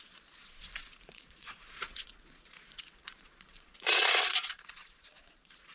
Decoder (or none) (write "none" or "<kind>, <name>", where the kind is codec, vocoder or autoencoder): vocoder, Vocos